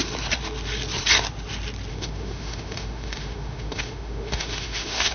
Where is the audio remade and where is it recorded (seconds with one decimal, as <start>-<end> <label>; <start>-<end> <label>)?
0.0-1.9 recorded; 1.9-5.1 remade